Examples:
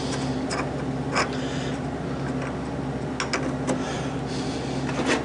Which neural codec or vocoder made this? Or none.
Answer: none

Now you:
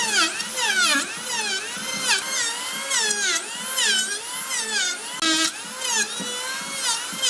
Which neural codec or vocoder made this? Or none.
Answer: none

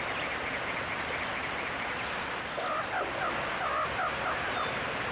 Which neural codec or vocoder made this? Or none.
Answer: none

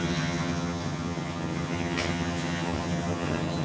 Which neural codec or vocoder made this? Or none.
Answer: vocoder, HiFi-GAN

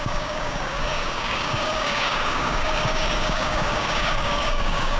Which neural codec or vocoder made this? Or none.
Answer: codec, DAC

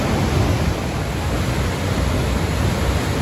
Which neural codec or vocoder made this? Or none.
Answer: none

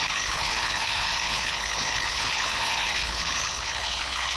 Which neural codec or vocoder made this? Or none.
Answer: codec, HILCodec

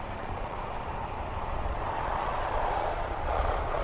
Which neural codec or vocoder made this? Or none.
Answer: vocoder, Vocos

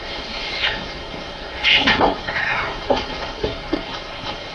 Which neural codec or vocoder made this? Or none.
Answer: codec, SNAC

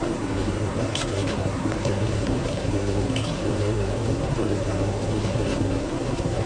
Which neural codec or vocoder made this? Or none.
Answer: codec, SNAC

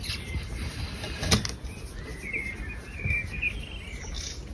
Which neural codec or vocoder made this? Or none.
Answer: none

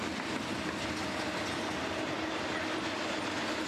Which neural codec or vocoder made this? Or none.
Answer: none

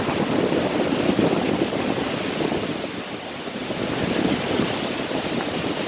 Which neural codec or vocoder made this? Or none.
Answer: vocoder, BigVGAN v2